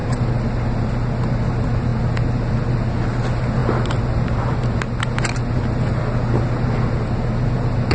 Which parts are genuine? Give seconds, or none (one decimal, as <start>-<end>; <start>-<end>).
0.0-7.9